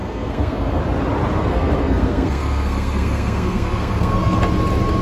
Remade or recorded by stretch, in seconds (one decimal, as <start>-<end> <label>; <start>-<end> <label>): 0.0-0.8 remade; 0.8-1.4 recorded; 1.4-4.4 remade; 4.4-5.0 recorded